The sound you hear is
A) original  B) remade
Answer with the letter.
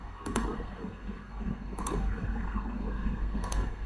B